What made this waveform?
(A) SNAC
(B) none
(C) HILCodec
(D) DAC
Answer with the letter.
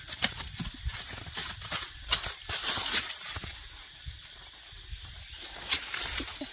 B